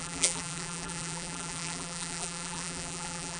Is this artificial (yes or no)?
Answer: yes